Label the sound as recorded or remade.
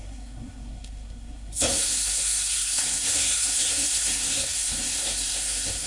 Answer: remade